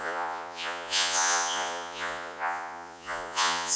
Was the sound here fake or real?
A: fake